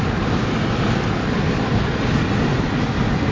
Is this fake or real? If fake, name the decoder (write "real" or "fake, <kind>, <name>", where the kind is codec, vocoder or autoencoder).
real